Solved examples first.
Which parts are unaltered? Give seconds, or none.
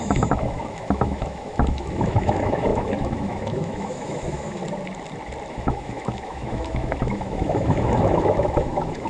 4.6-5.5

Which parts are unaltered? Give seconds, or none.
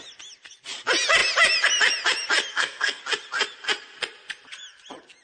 0.0-2.5; 3.0-5.2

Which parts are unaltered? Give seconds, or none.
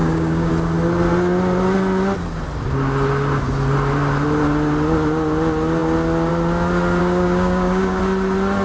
0.5-7.0; 8.0-8.6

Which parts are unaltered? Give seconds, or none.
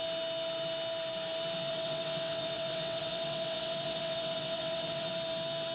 0.0-1.7; 5.1-5.7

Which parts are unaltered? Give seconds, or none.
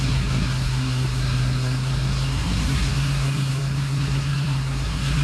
none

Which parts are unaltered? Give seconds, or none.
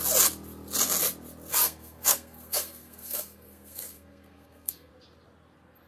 0.0-1.5; 4.9-5.9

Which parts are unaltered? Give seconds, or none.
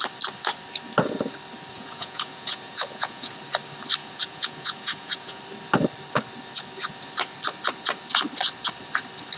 0.0-1.7; 3.3-4.0; 5.4-9.4